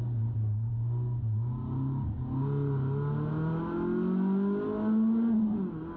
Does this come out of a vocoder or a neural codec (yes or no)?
no